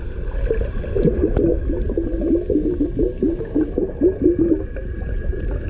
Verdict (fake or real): real